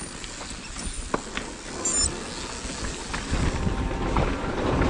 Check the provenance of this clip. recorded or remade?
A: recorded